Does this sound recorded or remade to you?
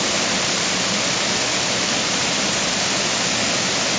recorded